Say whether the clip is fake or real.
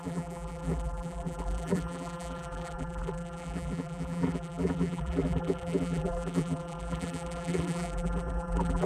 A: fake